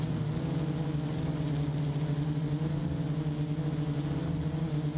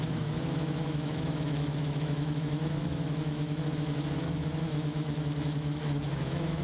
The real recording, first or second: first